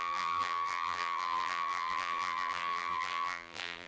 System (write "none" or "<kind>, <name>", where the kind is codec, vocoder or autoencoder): vocoder, BigVGAN v2